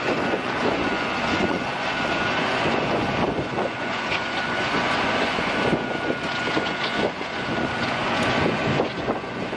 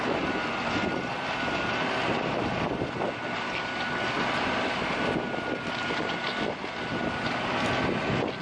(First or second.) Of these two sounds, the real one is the second